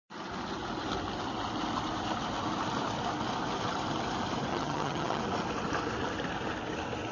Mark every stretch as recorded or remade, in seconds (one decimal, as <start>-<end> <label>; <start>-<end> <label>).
0.0-4.5 recorded; 4.5-5.2 remade; 5.2-7.1 recorded